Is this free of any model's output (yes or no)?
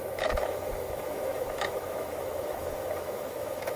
no